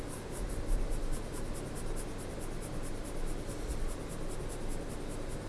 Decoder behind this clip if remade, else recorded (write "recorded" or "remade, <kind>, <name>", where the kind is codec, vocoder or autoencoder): recorded